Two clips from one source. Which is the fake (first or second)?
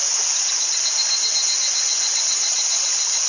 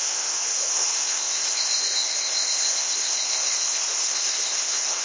second